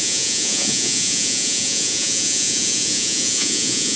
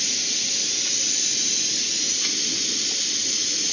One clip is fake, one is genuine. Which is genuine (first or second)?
second